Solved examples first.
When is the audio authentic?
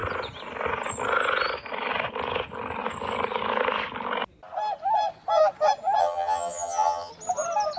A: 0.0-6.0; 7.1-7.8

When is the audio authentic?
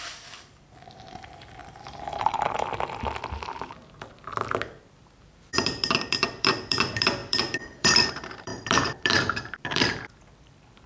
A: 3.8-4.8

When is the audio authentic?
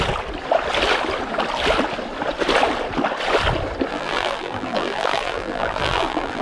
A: 0.0-3.9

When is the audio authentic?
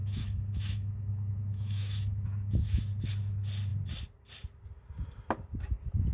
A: 2.8-6.1